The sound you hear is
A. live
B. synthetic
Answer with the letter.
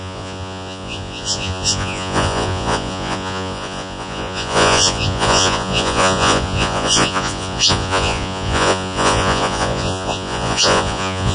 B